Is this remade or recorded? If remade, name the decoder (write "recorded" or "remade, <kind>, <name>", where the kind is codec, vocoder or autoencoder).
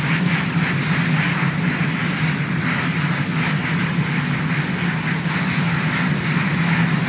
recorded